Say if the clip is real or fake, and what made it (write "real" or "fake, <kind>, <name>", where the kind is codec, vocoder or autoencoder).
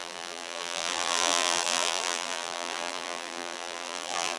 fake, vocoder, BigVGAN v2